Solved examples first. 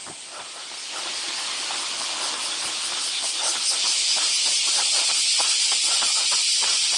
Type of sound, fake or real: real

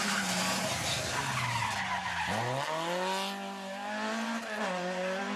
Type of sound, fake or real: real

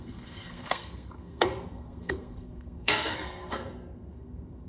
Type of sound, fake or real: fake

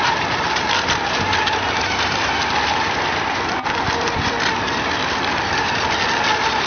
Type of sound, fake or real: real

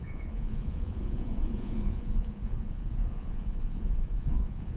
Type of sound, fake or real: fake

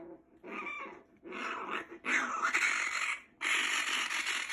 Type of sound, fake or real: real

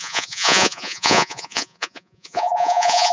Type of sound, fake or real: fake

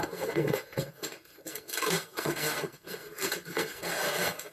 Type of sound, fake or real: fake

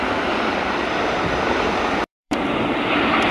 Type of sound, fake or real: fake